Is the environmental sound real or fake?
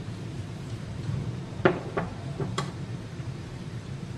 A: fake